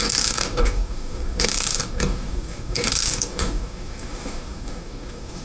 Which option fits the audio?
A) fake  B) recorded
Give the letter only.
A